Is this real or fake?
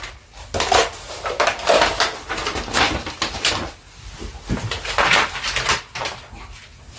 real